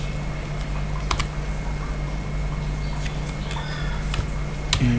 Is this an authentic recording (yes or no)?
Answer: yes